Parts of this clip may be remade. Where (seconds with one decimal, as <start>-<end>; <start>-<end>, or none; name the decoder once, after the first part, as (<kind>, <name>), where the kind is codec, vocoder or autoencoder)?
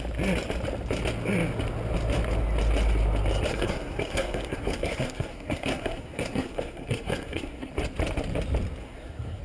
3.5-7.7 (codec, SNAC); 8.8-9.4